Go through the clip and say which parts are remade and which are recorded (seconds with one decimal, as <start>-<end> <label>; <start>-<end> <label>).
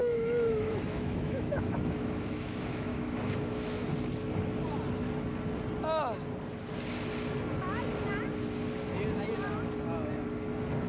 0.0-3.8 remade; 3.8-10.9 recorded